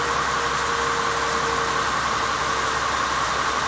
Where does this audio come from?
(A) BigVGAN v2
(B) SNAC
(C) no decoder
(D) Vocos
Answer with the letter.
C